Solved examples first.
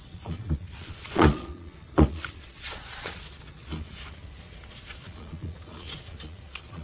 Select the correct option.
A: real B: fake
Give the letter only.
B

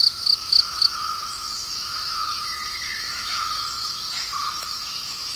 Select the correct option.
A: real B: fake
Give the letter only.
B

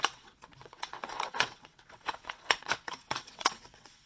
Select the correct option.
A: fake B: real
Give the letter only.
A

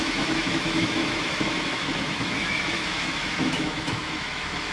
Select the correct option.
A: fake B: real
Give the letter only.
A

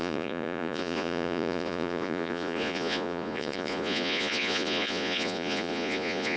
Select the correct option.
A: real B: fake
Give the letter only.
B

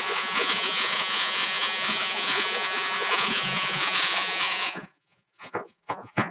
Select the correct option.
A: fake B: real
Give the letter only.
A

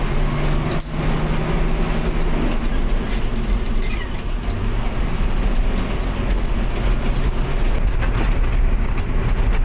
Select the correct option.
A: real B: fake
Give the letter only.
A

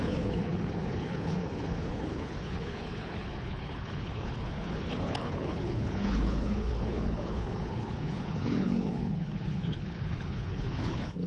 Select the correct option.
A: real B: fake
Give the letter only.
B